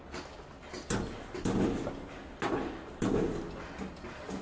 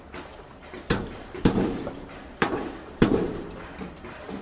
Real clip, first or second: first